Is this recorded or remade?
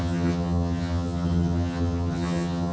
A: remade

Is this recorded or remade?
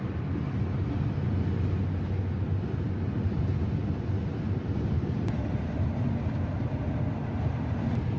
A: recorded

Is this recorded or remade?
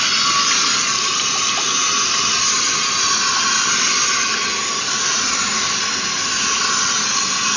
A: recorded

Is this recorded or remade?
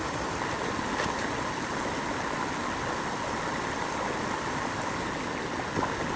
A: recorded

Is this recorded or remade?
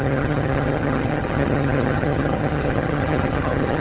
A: remade